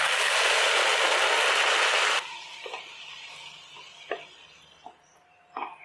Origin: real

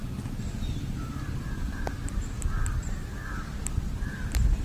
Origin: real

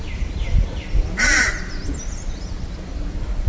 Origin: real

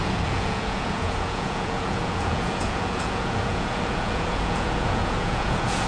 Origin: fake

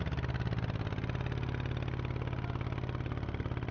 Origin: real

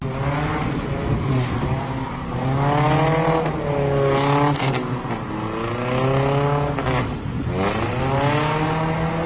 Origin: real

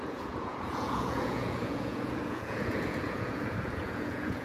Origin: fake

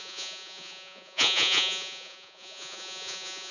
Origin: fake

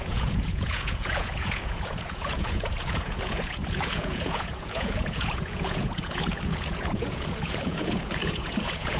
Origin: fake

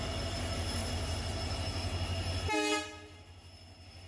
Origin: real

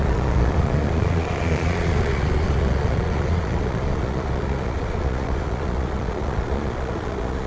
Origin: fake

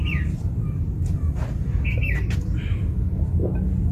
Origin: real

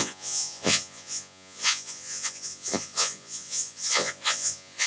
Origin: fake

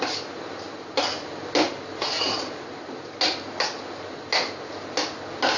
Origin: real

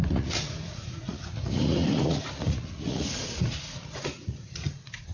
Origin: fake